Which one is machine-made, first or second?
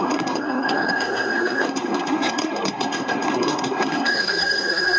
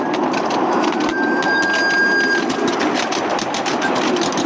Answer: first